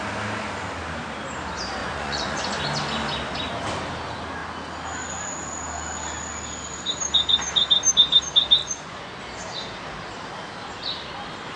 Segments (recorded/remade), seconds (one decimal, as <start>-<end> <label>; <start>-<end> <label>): 0.0-1.8 recorded; 1.8-2.6 remade; 2.6-8.6 recorded; 8.6-9.2 remade; 9.2-11.6 recorded